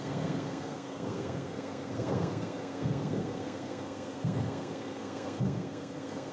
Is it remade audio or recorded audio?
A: remade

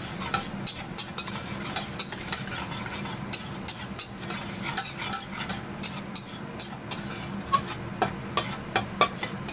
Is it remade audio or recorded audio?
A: recorded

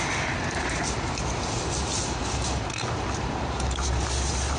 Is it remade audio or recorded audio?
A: recorded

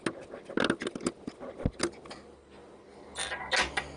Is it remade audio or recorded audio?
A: recorded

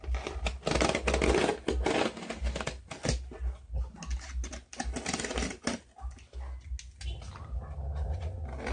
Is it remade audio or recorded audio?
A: recorded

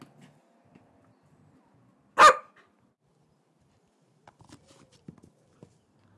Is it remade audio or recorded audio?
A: recorded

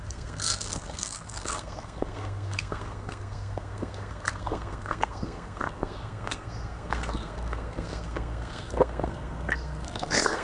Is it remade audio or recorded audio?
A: remade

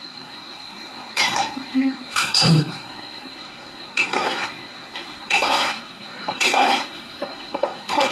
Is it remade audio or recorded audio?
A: remade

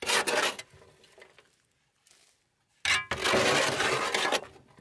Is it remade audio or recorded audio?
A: recorded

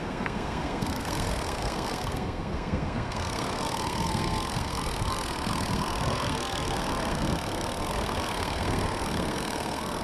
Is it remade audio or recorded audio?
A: remade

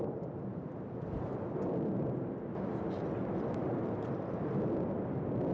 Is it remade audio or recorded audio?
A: recorded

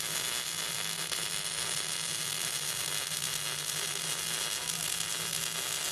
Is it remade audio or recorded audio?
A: recorded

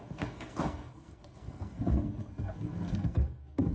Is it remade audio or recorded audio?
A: remade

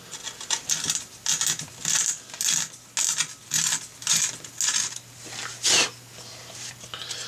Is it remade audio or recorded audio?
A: recorded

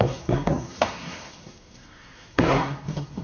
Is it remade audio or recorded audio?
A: remade